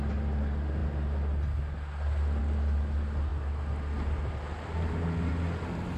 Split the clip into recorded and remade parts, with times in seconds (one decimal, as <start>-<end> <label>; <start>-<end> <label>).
0.0-6.0 recorded